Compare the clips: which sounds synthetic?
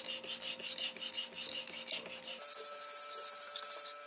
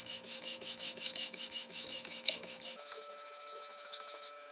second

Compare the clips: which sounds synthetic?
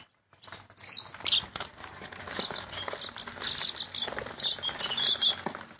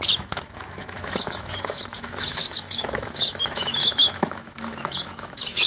second